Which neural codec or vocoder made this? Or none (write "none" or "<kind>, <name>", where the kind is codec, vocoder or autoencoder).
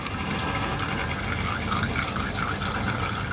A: none